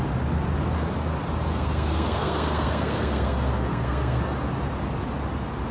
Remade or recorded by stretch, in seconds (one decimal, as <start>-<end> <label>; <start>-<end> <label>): 0.0-1.5 recorded; 1.5-4.2 remade; 4.2-5.7 recorded